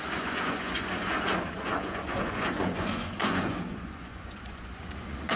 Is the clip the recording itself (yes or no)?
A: no